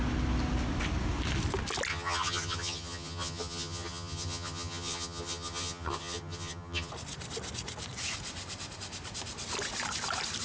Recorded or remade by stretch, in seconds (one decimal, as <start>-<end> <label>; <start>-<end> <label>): 0.0-1.9 recorded; 1.9-6.9 remade; 6.9-10.4 recorded